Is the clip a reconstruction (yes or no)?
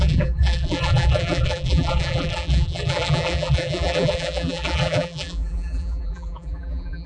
yes